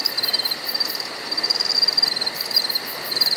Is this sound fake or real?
real